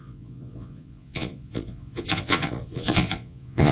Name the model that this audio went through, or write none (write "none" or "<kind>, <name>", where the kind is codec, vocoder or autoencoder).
vocoder, Vocos